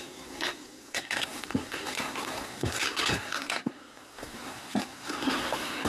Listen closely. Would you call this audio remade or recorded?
remade